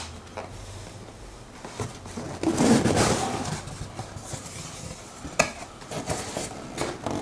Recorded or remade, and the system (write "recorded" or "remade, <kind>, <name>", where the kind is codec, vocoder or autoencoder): recorded